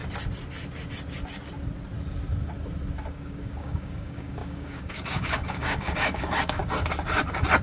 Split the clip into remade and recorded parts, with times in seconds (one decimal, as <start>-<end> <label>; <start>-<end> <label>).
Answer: 0.0-3.1 recorded; 3.1-6.6 remade; 6.6-7.6 recorded